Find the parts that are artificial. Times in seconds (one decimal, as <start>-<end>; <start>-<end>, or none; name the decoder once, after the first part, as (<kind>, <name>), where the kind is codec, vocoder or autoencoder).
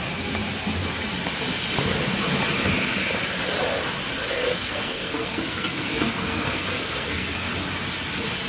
4.3-7.5 (codec, SNAC)